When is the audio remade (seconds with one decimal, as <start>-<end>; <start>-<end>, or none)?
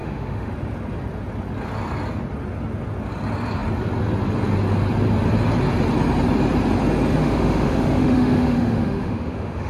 0.0-0.5; 7.2-9.7